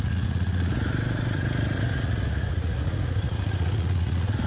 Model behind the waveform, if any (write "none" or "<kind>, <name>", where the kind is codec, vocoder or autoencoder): vocoder, Vocos